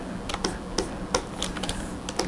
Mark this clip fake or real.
real